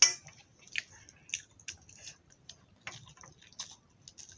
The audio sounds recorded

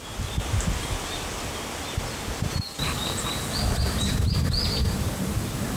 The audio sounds recorded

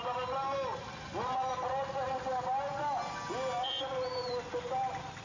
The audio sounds recorded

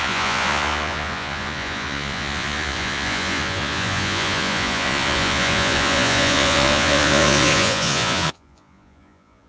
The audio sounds remade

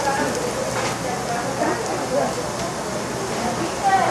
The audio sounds recorded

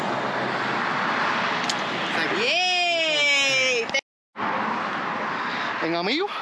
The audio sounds recorded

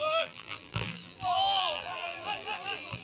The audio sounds remade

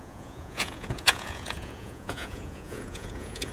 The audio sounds remade